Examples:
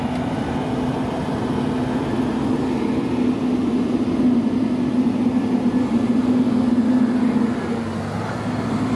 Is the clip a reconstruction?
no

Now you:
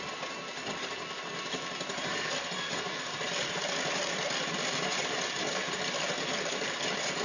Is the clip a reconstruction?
no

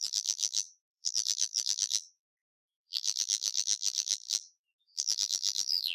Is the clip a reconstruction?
yes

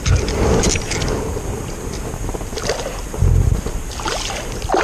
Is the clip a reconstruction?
no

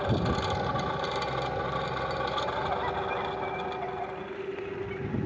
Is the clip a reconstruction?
no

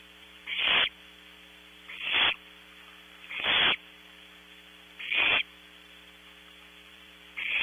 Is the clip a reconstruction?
yes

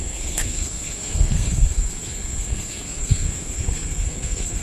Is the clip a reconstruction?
yes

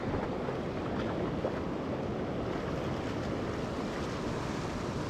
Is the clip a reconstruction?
no